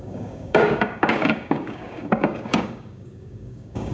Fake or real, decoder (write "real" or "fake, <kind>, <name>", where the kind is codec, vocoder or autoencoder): fake, codec, DAC